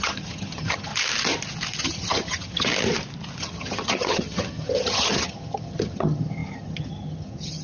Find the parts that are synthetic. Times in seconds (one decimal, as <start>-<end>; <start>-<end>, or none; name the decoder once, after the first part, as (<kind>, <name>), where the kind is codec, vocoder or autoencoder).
0.0-0.9 (vocoder, HiFi-GAN); 1.8-2.7; 3.4-7.6